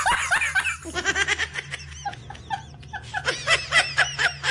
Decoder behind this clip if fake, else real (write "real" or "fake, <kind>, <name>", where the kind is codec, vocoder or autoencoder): real